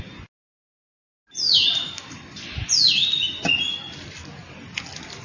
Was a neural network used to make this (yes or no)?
no